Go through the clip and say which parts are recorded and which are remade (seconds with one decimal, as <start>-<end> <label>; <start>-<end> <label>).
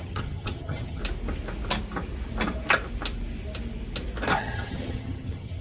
0.0-1.0 remade; 1.0-4.4 recorded; 4.4-5.6 remade